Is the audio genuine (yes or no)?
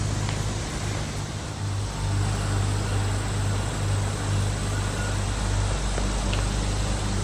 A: yes